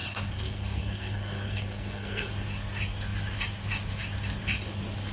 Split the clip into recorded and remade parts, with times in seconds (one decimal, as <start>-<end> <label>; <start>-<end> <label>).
0.0-2.3 remade; 2.3-5.1 recorded